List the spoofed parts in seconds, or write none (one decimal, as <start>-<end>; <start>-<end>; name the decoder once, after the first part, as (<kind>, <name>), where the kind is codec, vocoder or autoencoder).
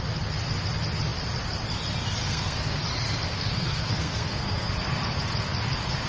2.2-2.8 (codec, SNAC); 3.3-4.7